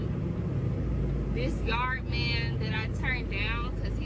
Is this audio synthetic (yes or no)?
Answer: no